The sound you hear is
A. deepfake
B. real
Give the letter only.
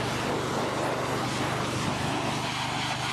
B